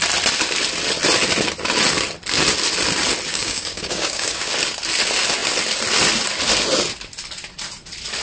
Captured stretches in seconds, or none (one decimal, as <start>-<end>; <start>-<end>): 0.0-3.3; 4.5-8.2